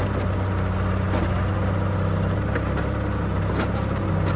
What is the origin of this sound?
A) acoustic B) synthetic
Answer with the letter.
A